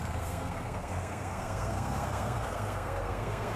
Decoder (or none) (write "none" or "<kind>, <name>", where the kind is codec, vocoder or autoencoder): codec, SNAC